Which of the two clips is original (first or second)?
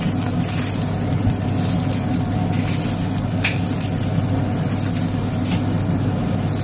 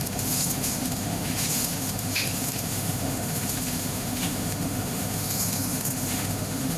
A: first